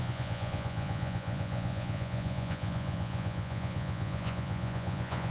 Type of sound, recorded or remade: remade